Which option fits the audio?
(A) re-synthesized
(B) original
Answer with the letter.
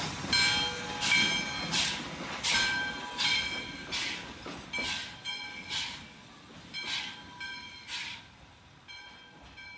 B